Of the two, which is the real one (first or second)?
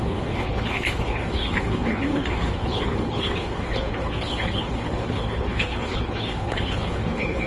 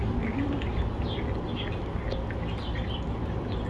second